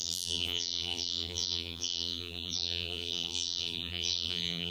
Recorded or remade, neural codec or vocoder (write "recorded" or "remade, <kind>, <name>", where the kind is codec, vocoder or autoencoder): remade, vocoder, BigVGAN v2